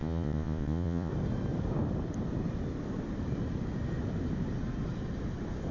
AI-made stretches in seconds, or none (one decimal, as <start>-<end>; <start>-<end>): 0.0-1.1